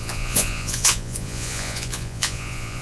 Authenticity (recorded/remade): remade